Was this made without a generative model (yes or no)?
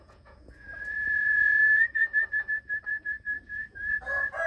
no